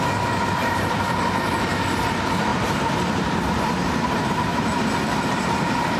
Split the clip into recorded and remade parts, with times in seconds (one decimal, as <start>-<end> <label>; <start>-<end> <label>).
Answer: 0.0-0.6 recorded; 0.6-1.3 remade; 1.3-2.5 recorded; 2.5-6.0 remade